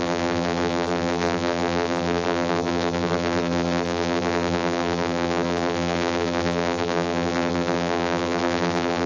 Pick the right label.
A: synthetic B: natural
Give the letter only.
A